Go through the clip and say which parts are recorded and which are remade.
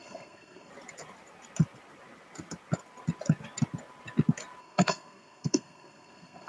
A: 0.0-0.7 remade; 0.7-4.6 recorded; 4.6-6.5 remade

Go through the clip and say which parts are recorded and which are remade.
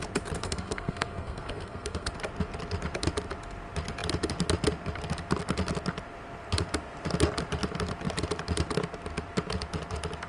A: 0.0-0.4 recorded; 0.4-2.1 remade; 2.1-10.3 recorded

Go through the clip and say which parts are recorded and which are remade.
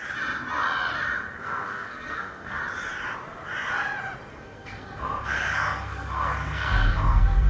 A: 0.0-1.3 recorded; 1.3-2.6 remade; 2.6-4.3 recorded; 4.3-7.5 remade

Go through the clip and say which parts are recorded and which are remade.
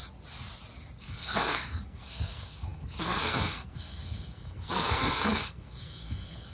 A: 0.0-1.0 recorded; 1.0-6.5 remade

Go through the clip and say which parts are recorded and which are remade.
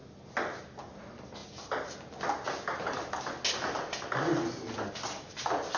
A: 0.0-5.8 recorded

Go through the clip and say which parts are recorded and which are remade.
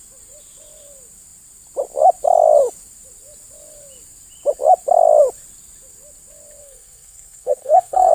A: 0.0-6.6 recorded; 6.6-8.1 remade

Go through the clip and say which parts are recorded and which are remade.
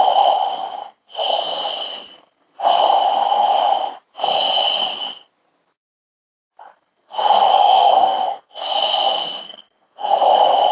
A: 0.0-0.8 recorded; 0.8-1.7 remade; 1.7-2.1 recorded; 2.1-2.8 remade; 2.8-6.7 recorded; 6.7-10.2 remade; 10.2-10.7 recorded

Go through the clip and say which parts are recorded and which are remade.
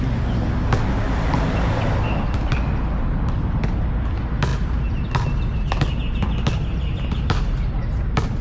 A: 0.0-8.4 recorded